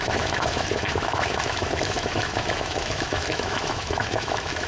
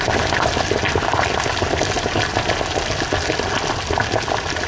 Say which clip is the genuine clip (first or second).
second